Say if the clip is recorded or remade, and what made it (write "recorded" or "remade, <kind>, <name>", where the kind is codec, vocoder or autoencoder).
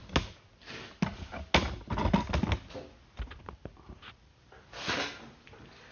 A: recorded